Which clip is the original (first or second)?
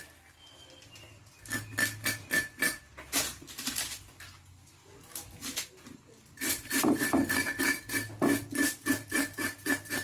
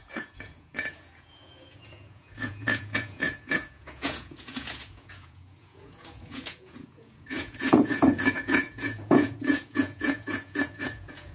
first